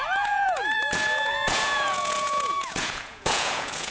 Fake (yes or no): yes